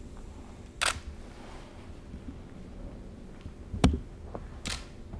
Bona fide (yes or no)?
yes